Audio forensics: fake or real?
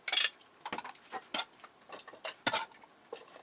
real